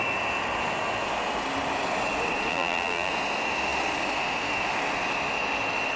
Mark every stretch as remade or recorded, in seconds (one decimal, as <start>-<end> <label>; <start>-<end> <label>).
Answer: 0.0-2.5 recorded; 2.5-3.1 remade; 3.1-6.0 recorded